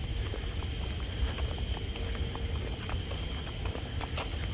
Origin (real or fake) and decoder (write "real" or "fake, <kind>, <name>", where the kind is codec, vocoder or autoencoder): real